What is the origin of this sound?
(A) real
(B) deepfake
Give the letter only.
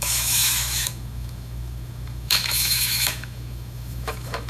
B